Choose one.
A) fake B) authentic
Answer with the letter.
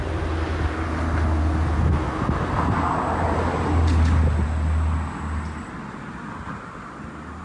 B